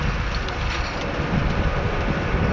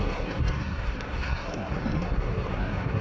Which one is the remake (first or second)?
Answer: second